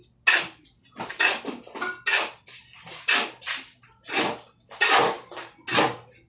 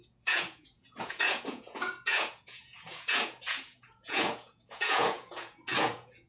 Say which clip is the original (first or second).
first